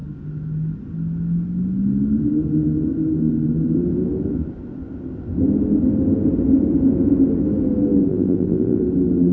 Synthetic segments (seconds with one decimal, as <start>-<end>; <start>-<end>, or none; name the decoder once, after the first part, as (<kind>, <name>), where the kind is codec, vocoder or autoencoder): 8.1-8.8 (vocoder, BigVGAN v2)